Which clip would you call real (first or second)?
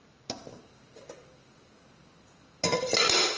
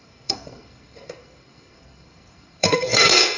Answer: first